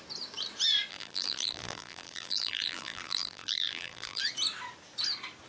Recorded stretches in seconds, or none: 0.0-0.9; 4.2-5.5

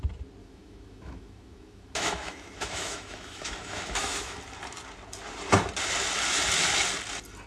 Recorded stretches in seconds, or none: 0.0-0.4; 4.4-7.5

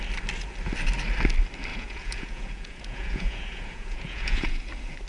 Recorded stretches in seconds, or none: 0.0-1.7; 4.6-5.1

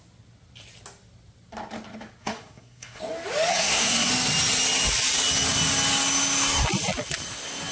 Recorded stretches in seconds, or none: 0.0-2.2; 3.0-3.5; 4.1-7.7

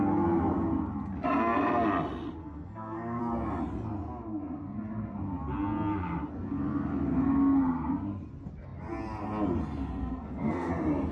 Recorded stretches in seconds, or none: 0.0-2.4; 3.2-10.0; 10.7-11.1

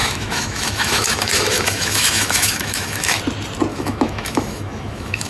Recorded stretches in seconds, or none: 3.2-3.7

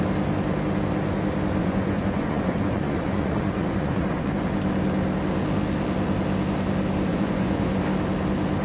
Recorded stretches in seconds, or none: 0.0-1.6; 4.3-7.1; 7.8-8.6